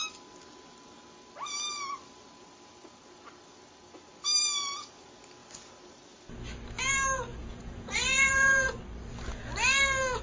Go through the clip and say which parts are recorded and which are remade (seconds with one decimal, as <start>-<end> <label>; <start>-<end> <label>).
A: 0.0-7.3 recorded; 7.3-8.7 remade; 8.7-10.2 recorded